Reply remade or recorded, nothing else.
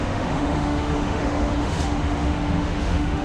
remade